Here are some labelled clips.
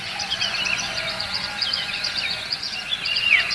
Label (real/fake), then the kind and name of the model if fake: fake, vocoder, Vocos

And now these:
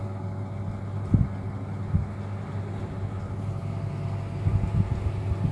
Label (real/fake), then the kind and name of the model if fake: real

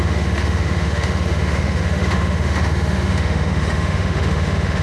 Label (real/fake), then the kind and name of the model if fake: fake, autoencoder, DAC-VAE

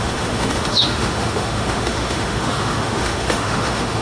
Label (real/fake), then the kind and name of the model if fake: fake, autoencoder, DAC-VAE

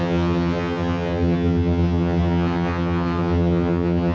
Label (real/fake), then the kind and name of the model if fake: fake, vocoder, HiFi-GAN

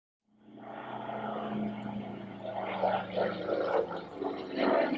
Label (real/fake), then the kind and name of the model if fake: real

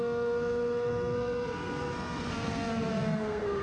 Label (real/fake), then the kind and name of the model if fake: fake, codec, SNAC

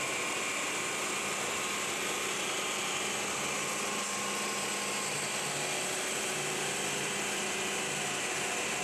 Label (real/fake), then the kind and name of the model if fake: real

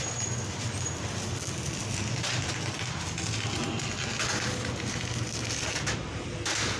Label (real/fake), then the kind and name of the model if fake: real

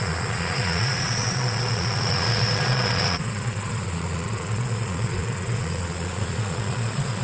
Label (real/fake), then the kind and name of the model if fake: fake, vocoder, Vocos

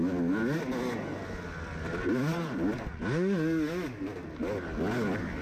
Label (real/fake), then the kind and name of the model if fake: real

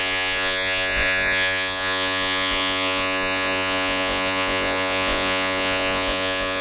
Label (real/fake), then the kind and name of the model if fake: fake, vocoder, Vocos